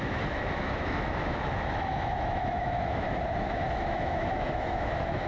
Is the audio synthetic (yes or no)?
yes